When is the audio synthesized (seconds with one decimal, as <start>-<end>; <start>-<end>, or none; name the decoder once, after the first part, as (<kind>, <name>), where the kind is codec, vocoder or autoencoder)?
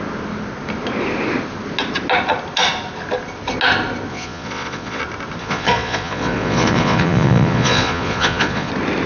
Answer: 4.1-5.0 (vocoder, Vocos); 5.4-8.7